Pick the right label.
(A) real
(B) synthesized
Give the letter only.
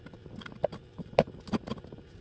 A